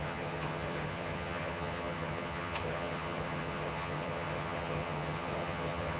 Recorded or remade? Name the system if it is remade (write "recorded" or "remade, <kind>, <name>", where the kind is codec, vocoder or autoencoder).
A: remade, vocoder, HiFi-GAN